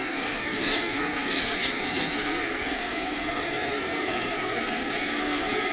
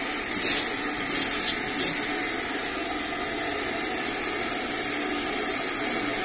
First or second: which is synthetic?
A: first